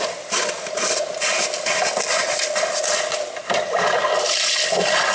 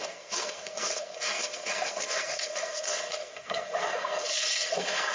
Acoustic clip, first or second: first